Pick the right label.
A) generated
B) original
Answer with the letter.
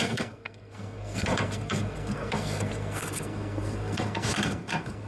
A